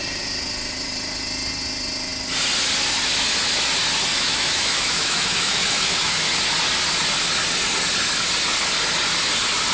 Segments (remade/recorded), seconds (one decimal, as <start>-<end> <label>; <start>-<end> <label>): 0.0-4.1 recorded; 4.1-6.4 remade; 6.4-9.7 recorded